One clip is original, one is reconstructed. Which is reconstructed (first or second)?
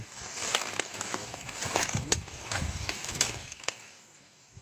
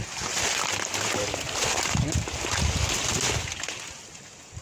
first